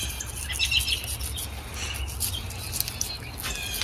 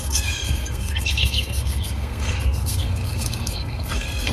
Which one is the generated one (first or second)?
second